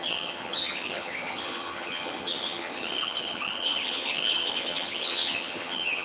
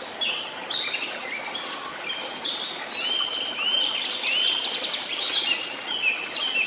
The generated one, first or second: first